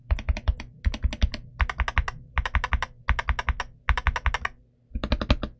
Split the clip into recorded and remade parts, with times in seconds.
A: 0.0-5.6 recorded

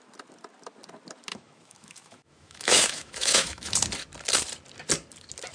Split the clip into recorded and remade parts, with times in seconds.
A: 0.0-1.3 recorded; 1.3-3.7 remade; 3.7-5.5 recorded